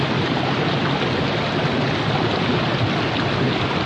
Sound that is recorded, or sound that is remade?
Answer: recorded